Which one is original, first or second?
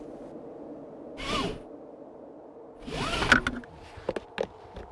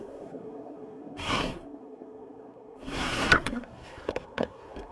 first